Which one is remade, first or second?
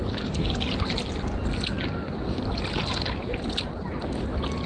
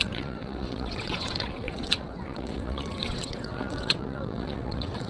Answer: second